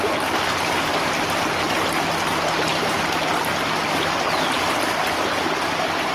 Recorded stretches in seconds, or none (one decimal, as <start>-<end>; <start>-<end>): 0.0-6.1